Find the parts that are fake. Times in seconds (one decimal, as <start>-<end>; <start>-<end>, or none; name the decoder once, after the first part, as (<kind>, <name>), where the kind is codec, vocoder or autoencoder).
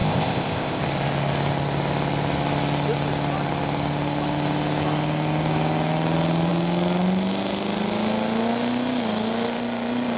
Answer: 0.0-0.8 (codec, ZipCodec)